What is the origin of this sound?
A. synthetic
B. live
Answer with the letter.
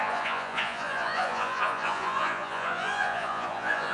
A